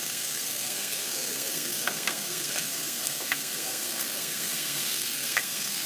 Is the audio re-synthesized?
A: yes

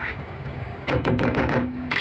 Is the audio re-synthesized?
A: yes